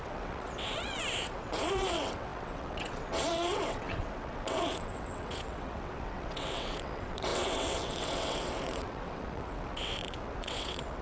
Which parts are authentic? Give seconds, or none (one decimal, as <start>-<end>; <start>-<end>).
none